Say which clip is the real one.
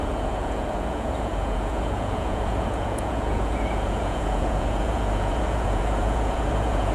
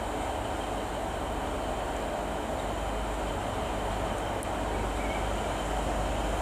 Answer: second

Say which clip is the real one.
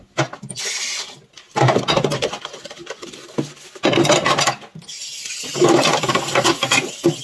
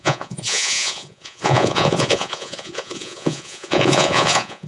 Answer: first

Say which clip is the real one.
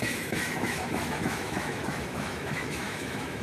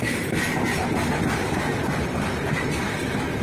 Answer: second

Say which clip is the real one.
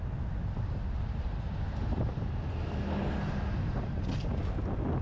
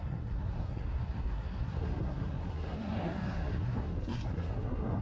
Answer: first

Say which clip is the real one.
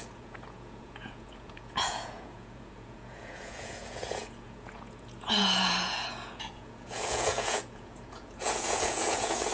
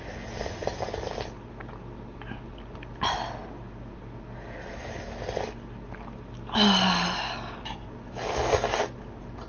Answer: second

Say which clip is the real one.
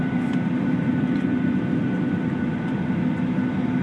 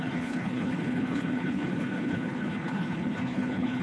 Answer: first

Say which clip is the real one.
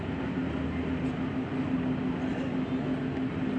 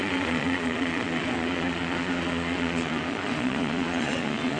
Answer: first